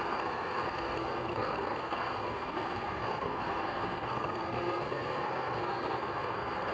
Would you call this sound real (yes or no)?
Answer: no